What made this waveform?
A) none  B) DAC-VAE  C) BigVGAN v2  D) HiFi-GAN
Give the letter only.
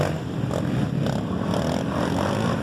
A